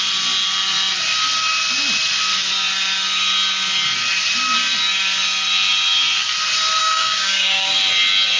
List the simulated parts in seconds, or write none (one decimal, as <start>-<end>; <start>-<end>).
6.8-7.7